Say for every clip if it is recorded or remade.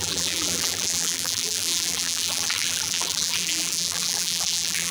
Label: remade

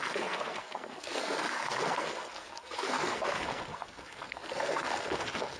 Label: remade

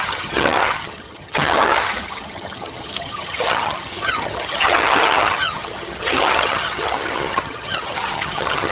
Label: remade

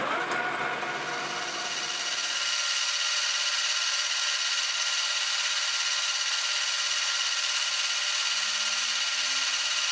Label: recorded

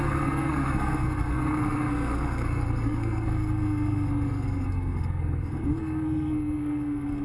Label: remade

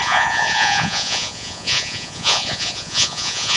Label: remade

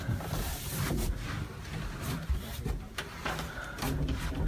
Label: remade